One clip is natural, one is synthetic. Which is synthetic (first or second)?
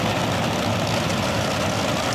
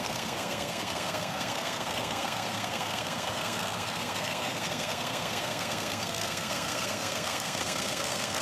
second